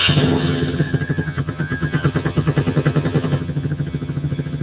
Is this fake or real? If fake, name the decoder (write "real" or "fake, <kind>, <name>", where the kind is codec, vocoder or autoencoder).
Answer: fake, vocoder, HiFi-GAN